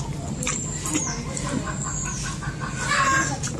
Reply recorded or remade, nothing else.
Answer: recorded